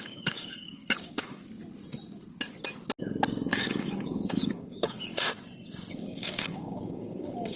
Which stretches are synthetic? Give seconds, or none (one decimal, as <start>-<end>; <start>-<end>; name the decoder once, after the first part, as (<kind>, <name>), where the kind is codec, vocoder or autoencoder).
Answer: 0.0-1.4 (codec, DAC); 3.5-5.3; 5.9-7.6